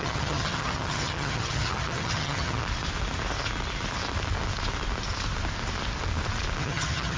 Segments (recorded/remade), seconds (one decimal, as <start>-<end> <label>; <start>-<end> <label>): 0.0-2.6 remade; 2.6-6.6 recorded; 6.6-7.2 remade

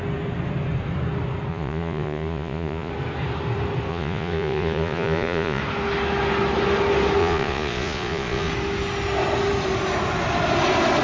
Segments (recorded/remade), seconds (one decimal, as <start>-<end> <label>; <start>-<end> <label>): 0.0-1.5 recorded; 1.5-2.9 remade; 2.9-3.9 recorded; 3.9-5.6 remade; 5.6-7.2 recorded; 7.2-8.5 remade; 8.5-11.0 recorded